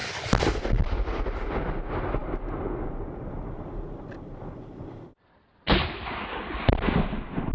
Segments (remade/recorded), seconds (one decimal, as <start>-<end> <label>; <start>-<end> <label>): 0.0-7.5 recorded